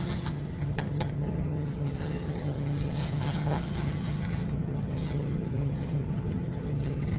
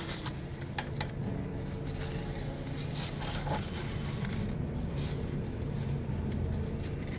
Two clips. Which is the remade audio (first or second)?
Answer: first